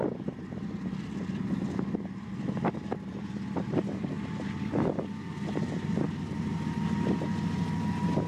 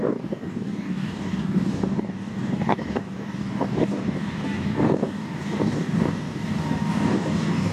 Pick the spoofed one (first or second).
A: second